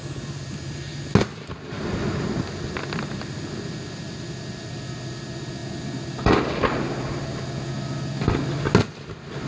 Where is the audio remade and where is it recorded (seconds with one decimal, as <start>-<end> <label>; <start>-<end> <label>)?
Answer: 0.0-9.5 recorded